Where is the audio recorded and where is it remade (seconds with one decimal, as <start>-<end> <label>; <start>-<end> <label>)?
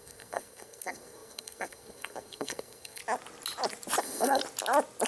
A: 0.0-3.0 remade; 3.0-4.0 recorded; 4.0-4.4 remade; 4.4-5.1 recorded